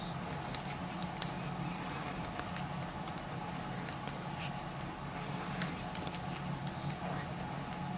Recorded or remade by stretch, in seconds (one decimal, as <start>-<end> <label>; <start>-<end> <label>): 0.0-8.0 recorded